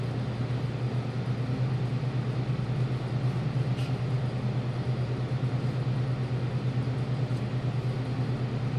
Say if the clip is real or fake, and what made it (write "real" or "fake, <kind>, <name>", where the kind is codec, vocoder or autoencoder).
real